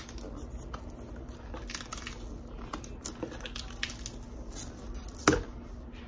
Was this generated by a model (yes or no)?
no